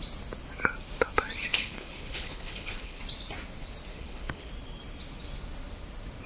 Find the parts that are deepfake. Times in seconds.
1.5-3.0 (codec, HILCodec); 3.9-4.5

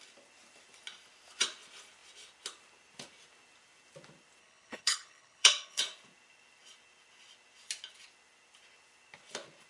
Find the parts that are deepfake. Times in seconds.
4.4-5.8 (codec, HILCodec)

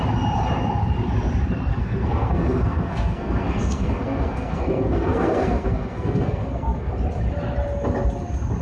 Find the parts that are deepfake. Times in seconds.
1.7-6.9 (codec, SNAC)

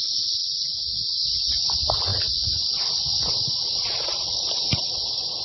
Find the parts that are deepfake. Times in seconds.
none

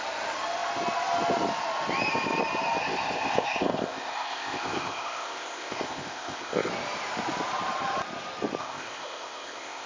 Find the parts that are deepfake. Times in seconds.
2.8-6.7 (codec, ZipCodec); 8.6-9.9

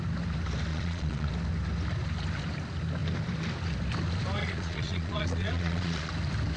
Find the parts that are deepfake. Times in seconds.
0.7-1.3 (vocoder, Vocos); 4.4-6.1